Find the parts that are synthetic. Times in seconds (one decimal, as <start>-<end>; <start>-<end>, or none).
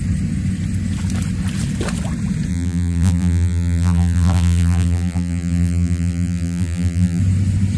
2.5-7.2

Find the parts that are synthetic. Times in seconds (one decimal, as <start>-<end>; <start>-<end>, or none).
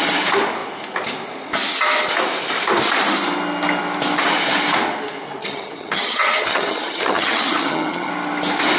5.4-8.1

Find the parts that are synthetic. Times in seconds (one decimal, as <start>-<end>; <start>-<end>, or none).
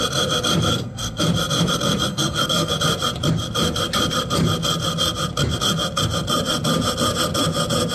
0.7-1.2; 2.1-2.7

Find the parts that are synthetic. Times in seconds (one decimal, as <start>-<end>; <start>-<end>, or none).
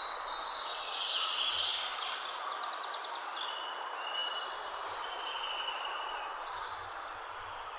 none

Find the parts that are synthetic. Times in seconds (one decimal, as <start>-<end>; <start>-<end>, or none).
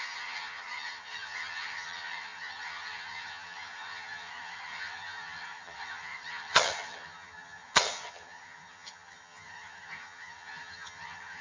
0.0-11.4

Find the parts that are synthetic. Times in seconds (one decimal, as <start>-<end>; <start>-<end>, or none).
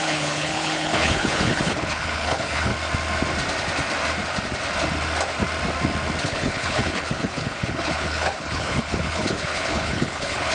0.0-2.7; 6.2-10.5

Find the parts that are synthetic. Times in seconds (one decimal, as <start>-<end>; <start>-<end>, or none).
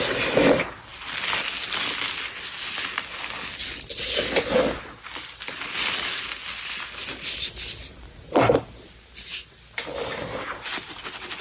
none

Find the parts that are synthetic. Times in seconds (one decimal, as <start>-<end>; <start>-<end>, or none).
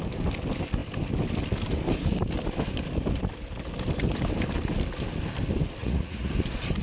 5.8-6.3